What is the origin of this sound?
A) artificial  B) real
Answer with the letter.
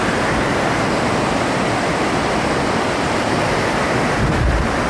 B